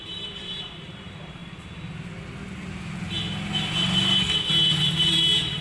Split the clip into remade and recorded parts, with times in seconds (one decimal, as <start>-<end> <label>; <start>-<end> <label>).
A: 0.0-1.4 remade; 1.4-4.8 recorded; 4.8-5.6 remade